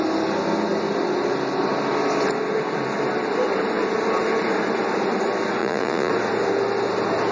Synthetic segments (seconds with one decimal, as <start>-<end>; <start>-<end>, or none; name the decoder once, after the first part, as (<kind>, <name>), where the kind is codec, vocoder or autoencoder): 5.6-6.1 (vocoder, Vocos)